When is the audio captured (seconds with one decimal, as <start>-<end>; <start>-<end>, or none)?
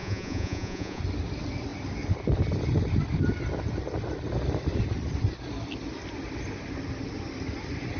1.0-8.0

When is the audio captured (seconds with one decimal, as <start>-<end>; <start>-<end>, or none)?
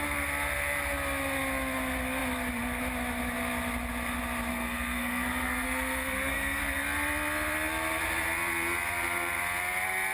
0.0-4.5; 6.6-10.1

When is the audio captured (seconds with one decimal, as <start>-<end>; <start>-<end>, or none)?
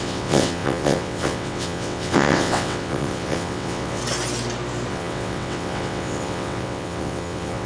4.0-4.9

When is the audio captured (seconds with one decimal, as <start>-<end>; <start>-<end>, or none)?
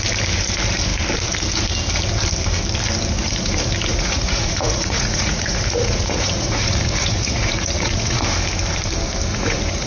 0.0-3.9; 8.2-9.3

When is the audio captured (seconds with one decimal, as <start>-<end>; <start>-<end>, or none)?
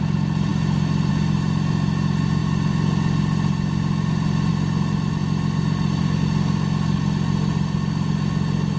0.0-8.8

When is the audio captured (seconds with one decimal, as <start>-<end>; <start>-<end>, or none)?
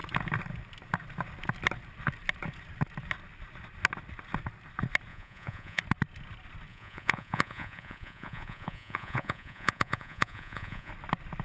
0.0-5.1; 5.8-6.7; 10.9-11.4